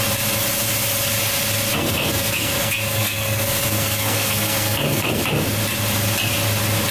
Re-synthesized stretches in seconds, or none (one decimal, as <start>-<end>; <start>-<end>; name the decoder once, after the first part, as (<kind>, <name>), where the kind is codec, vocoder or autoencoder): 1.7-5.2 (codec, SNAC)